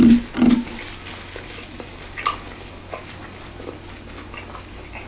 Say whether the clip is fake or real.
real